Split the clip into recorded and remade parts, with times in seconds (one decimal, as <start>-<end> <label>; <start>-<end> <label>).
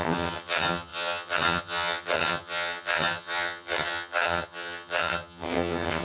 0.0-6.0 remade